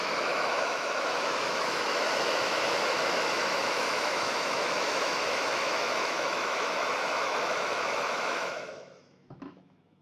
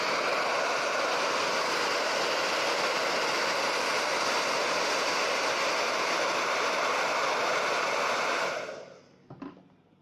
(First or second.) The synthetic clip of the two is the first